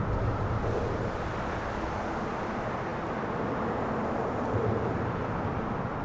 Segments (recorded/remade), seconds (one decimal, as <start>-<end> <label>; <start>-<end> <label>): 0.0-6.0 recorded